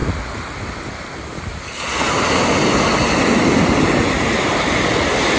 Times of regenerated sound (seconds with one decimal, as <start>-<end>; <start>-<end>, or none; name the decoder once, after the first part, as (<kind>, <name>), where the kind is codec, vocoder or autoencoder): none